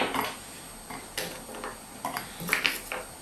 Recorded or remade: recorded